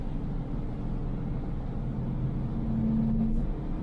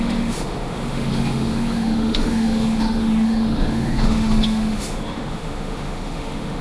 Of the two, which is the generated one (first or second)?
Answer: second